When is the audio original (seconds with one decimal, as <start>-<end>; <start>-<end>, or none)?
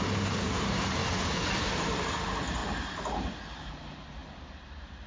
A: 2.6-3.7